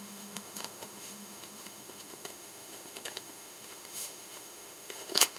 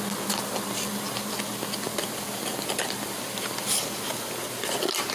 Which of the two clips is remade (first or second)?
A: first